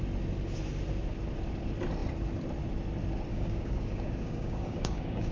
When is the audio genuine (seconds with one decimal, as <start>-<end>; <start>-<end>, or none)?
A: 0.0-3.3